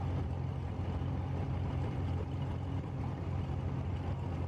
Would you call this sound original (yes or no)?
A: yes